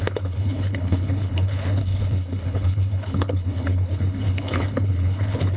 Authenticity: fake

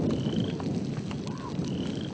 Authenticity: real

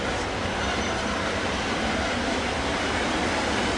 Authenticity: real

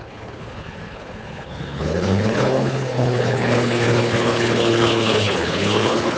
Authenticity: fake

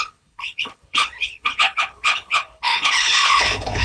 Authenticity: fake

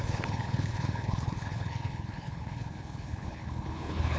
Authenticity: fake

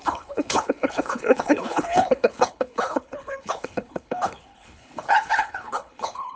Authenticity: fake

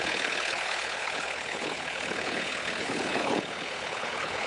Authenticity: fake